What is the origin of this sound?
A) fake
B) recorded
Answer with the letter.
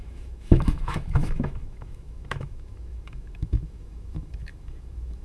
A